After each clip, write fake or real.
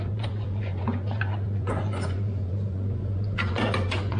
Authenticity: fake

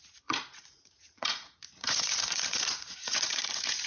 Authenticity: fake